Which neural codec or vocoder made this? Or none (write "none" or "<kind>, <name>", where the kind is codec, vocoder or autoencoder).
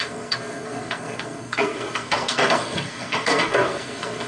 codec, SNAC